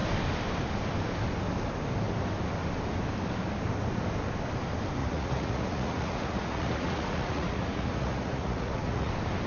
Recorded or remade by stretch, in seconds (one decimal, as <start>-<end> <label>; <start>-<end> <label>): 0.0-5.0 recorded; 5.0-9.1 remade; 9.1-9.5 recorded